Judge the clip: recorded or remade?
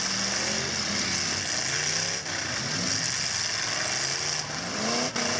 recorded